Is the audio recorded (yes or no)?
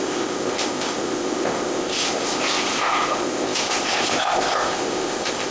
no